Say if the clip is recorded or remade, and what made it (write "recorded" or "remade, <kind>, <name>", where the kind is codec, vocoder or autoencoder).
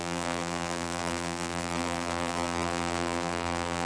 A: remade, vocoder, BigVGAN v2